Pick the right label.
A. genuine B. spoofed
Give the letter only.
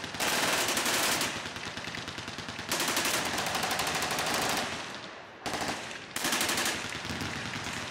A